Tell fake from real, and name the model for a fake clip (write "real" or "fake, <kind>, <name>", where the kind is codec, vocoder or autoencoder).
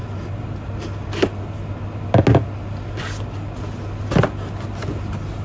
real